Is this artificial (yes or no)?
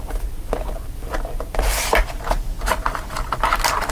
no